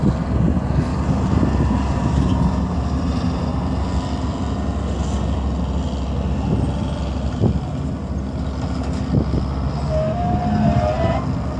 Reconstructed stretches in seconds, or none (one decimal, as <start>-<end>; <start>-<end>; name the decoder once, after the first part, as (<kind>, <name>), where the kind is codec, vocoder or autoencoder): 0.9-3.5 (vocoder, BigVGAN v2)